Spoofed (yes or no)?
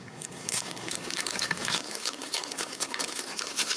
yes